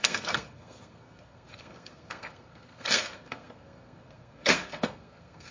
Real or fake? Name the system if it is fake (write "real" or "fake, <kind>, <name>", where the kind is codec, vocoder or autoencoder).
fake, codec, SNAC